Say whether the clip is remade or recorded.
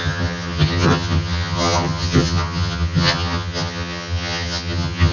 remade